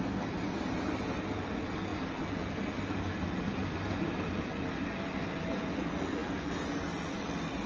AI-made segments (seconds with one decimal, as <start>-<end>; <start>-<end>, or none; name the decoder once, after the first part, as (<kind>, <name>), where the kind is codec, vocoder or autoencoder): none